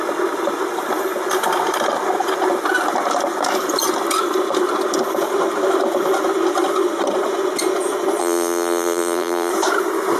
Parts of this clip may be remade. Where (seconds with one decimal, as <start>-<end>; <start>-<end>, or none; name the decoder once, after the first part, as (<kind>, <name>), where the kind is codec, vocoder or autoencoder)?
8.2-9.5 (vocoder, BigVGAN v2)